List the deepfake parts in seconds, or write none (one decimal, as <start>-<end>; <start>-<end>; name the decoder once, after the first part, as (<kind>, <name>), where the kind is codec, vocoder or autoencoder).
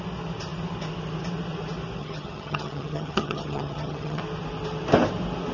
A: 2.0-4.2 (vocoder, HiFi-GAN)